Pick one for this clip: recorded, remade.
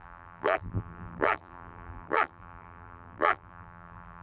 remade